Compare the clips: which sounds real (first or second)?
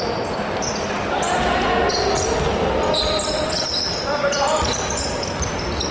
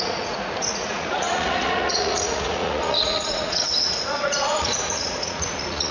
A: first